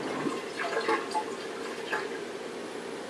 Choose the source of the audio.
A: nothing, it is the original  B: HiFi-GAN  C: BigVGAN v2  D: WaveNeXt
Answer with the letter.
A